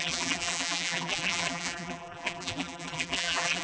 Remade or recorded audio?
remade